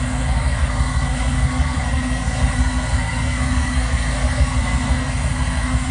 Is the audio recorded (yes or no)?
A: no